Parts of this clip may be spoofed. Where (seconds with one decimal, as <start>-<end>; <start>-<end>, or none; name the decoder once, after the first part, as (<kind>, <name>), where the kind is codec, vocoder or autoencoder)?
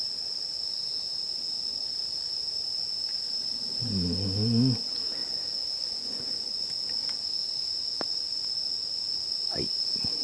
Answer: 5.2-6.7 (vocoder, Vocos)